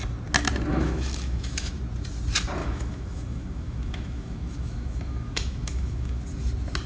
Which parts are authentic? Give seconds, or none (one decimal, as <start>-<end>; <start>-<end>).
0.0-0.7; 1.7-2.6; 6.2-6.9